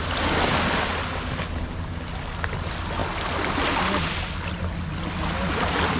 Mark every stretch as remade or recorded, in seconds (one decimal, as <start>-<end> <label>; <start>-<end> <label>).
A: 0.0-6.0 recorded